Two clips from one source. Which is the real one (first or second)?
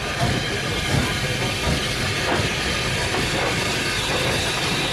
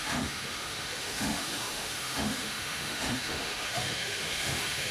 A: first